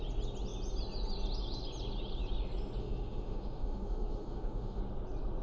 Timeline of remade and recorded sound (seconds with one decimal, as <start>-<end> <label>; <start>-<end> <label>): 0.0-2.8 recorded; 2.8-4.8 remade; 4.8-5.4 recorded